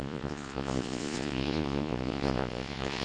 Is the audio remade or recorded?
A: remade